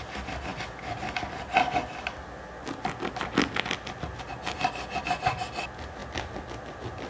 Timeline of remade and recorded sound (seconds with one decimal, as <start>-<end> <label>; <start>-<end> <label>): 0.0-7.1 recorded